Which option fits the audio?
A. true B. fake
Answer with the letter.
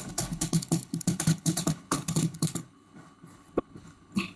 B